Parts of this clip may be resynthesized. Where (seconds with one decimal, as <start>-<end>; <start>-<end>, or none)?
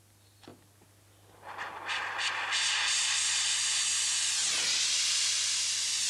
none